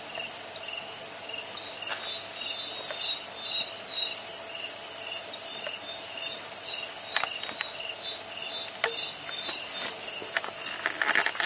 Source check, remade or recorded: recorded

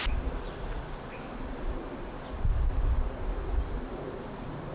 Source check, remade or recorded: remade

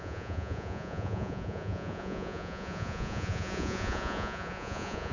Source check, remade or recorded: remade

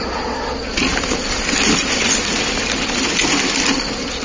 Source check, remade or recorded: recorded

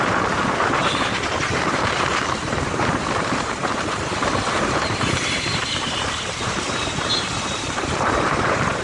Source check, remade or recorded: remade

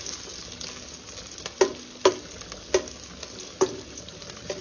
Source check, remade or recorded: recorded